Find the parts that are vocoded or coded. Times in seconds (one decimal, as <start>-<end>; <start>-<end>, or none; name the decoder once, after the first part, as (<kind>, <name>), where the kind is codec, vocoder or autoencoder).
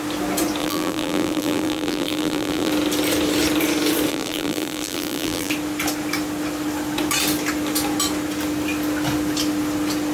0.6-2.7 (vocoder, BigVGAN v2); 4.1-5.5